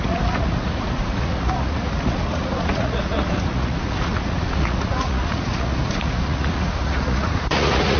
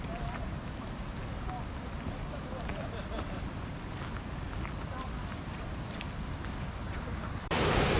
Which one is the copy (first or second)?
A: first